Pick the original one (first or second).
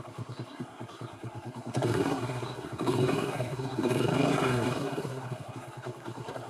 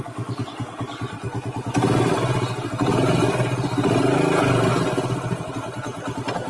second